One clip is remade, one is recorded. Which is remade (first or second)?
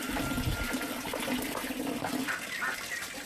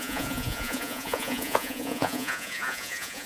second